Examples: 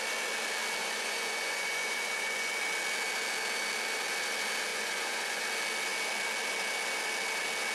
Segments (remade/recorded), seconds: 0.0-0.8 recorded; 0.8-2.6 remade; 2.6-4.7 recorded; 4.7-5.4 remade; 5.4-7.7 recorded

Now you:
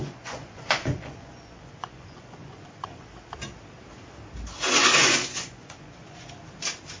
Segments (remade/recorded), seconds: 0.0-3.1 remade; 3.1-4.9 recorded; 4.9-6.3 remade; 6.3-7.0 recorded

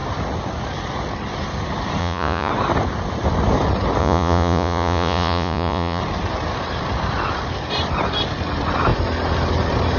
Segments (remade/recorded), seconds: 0.0-2.0 recorded; 2.0-2.5 remade; 2.5-4.0 recorded; 4.0-6.0 remade; 6.0-10.0 recorded

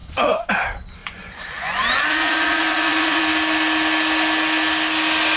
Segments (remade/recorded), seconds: 0.0-0.5 remade; 0.5-1.0 recorded; 1.0-3.2 remade; 3.2-5.4 recorded

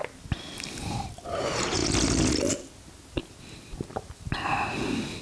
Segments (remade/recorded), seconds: 0.0-5.2 recorded